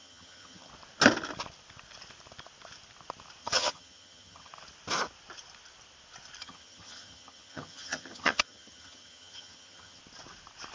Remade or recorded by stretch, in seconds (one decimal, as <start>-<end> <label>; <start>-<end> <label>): 0.0-0.7 remade; 0.7-3.4 recorded; 3.4-4.5 remade; 4.5-6.4 recorded; 6.4-10.0 remade; 10.0-10.7 recorded